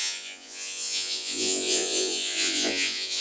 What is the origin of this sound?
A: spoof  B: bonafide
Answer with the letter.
A